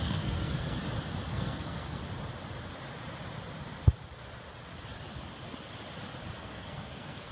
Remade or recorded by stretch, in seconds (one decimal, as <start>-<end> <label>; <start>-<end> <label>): 0.0-0.8 remade; 0.8-1.3 recorded; 1.3-2.0 remade; 2.0-6.4 recorded; 6.4-7.3 remade